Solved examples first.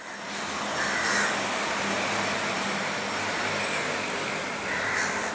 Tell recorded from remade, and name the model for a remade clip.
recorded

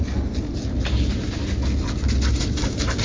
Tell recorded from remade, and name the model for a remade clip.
recorded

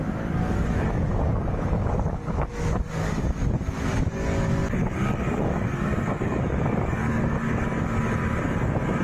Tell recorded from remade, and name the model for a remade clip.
remade, codec, DAC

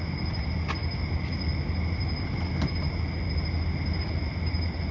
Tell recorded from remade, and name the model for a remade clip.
recorded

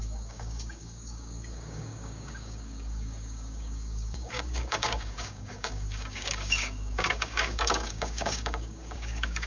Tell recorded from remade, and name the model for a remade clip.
remade, codec, DAC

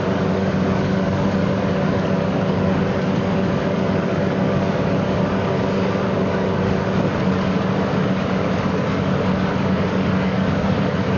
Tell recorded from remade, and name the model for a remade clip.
remade, codec, DAC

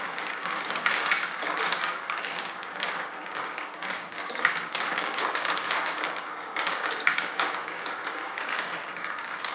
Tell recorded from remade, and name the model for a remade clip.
remade, codec, DAC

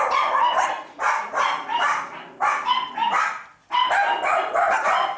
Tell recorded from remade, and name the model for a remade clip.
recorded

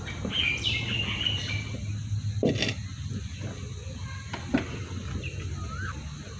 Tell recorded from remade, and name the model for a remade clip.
recorded